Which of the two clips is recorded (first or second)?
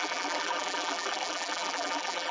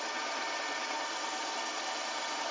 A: second